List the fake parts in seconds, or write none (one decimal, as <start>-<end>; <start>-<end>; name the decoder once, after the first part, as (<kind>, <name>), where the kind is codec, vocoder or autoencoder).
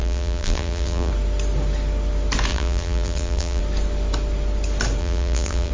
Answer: 0.0-1.1 (vocoder, BigVGAN v2); 2.5-3.6; 5.0-5.7